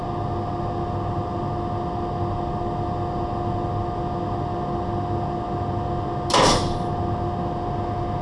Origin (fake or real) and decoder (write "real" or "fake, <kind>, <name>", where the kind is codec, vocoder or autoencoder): real